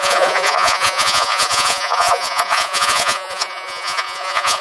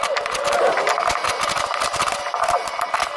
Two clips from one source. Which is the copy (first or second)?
first